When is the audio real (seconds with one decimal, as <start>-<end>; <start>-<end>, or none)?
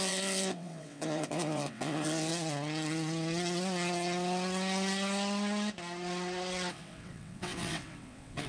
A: 2.3-6.7